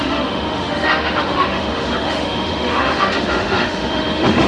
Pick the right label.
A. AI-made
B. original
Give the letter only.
A